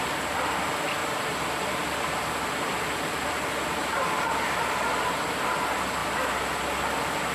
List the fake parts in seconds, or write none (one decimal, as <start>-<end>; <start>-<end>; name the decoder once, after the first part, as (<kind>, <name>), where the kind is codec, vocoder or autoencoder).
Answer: none